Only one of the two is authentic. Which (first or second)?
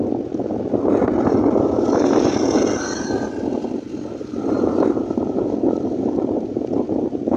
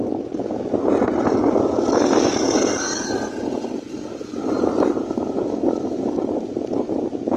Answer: second